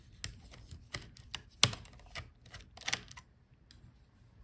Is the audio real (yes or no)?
yes